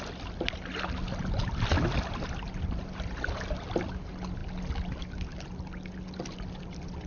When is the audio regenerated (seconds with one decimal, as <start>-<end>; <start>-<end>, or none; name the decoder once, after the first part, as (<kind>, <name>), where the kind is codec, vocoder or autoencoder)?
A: none